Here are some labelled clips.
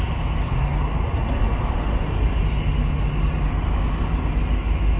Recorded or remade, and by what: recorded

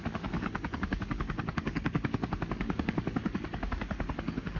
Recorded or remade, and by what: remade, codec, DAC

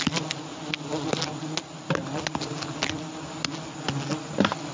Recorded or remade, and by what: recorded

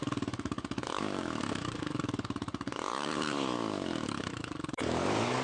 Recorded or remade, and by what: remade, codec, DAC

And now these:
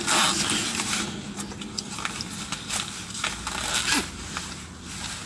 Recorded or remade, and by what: recorded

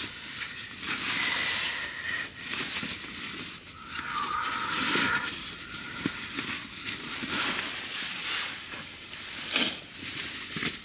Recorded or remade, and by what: recorded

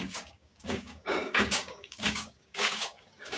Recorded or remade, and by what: remade, codec, DAC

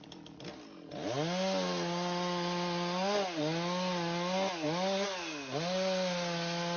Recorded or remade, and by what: recorded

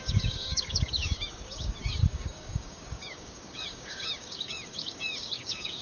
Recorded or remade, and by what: remade, codec, DAC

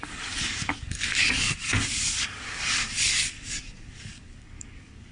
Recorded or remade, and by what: remade, codec, DAC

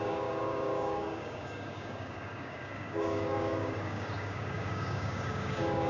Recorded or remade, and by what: remade, codec, DAC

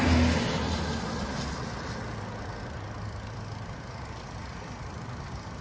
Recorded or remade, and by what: recorded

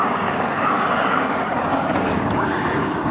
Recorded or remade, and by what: remade, codec, DAC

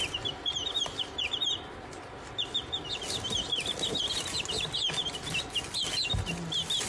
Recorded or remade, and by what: recorded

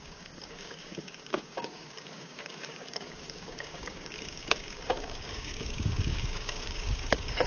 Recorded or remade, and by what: remade, codec, DAC